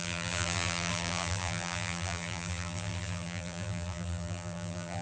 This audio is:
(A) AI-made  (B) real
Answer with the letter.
A